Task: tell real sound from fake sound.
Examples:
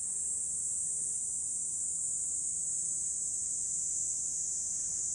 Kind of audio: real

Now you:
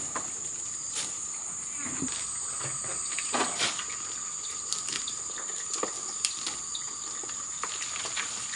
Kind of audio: real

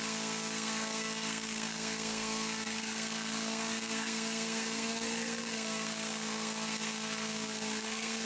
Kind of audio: fake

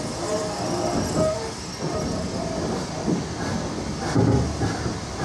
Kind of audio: real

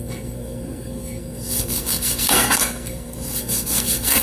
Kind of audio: fake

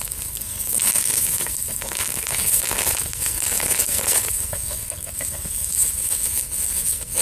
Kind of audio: fake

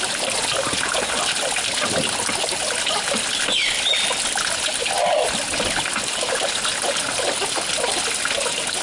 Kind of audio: real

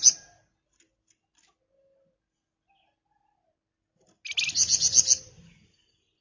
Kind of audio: real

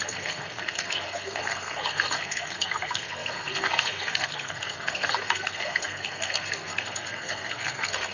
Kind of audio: fake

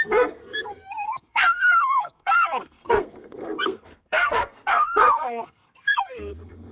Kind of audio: fake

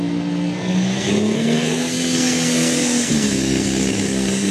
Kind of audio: fake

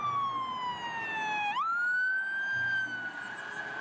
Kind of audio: real